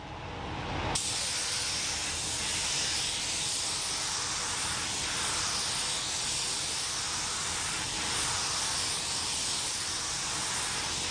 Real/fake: real